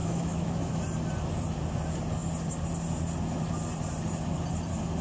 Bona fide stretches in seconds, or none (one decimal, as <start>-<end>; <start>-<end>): 0.8-5.0